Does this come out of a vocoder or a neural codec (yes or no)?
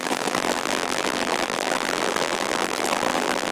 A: yes